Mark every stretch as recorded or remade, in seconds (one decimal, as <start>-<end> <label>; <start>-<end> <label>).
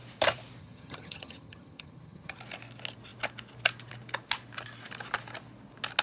0.0-0.6 recorded; 0.6-2.4 remade; 2.4-6.0 recorded